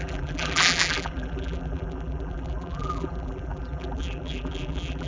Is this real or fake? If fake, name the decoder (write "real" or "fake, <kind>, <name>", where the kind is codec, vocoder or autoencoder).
fake, vocoder, BigVGAN v2